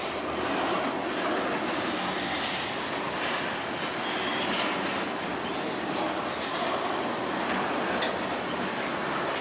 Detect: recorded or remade recorded